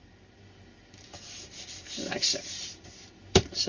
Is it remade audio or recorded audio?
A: remade